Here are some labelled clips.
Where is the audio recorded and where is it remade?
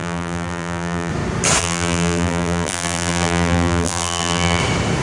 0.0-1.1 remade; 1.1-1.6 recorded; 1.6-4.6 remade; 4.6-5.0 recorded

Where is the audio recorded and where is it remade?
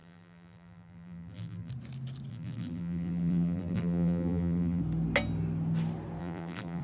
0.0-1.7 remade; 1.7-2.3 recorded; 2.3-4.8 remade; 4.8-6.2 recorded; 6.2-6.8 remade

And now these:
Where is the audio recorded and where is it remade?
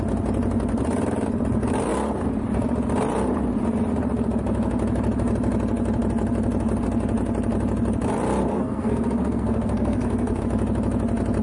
0.0-8.5 recorded; 8.5-10.4 remade; 10.4-11.4 recorded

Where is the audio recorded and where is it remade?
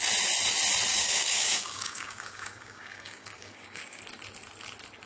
0.0-0.9 recorded; 0.9-4.0 remade; 4.0-5.1 recorded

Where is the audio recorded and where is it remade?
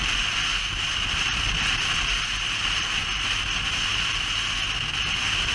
0.0-5.5 recorded